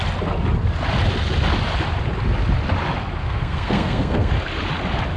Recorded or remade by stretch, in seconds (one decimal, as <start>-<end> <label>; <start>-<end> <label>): 0.0-3.2 recorded; 3.2-4.3 remade; 4.3-5.2 recorded

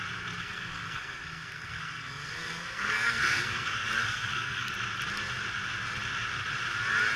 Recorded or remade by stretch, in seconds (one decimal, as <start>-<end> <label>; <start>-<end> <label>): 0.0-0.4 recorded; 0.4-4.7 remade; 4.7-7.2 recorded

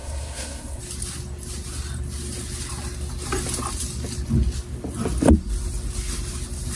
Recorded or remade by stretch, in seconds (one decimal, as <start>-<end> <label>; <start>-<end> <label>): 0.0-0.8 remade; 0.8-6.8 recorded

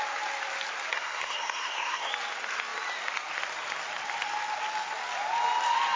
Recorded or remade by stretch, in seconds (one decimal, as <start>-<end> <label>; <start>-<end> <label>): 0.0-0.9 recorded; 0.9-2.1 remade; 2.1-6.0 recorded

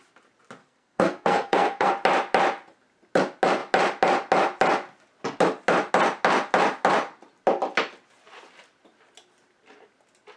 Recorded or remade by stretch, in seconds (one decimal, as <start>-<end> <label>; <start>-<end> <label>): 0.0-0.6 recorded; 0.6-1.9 remade; 1.9-10.4 recorded

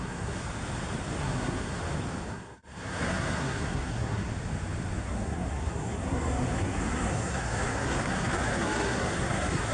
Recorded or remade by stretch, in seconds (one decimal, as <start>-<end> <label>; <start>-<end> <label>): 0.0-0.4 remade; 0.4-1.2 recorded; 1.2-1.8 remade; 1.8-2.3 recorded; 2.3-4.3 remade; 4.3-5.0 recorded; 5.0-9.7 remade